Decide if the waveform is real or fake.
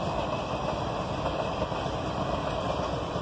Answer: real